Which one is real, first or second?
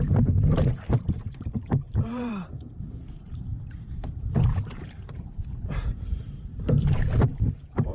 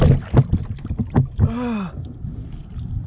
second